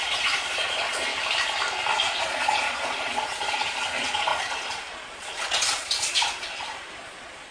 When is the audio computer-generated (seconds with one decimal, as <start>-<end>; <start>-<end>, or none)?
0.0-1.1; 2.2-7.5